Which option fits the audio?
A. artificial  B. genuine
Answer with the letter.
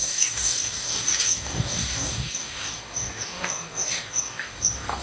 A